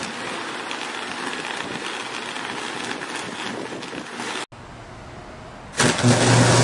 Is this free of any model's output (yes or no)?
yes